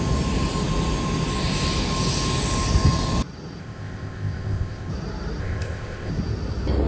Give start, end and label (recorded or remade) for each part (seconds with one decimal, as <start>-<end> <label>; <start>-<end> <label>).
0.0-3.6 recorded; 3.6-4.9 remade; 4.9-5.4 recorded; 5.4-6.1 remade; 6.1-6.9 recorded